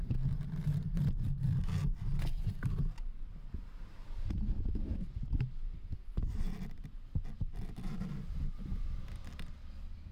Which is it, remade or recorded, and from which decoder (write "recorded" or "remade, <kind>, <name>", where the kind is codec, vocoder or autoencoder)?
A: remade, vocoder, BigVGAN v2